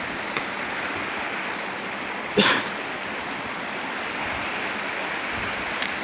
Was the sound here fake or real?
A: real